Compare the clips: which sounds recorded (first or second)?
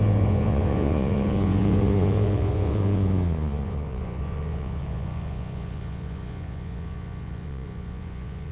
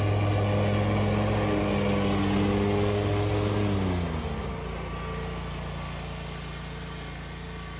second